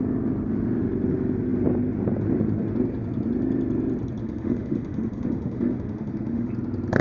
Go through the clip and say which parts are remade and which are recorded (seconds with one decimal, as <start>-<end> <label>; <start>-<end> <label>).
0.0-4.2 recorded; 4.2-6.5 remade; 6.5-7.0 recorded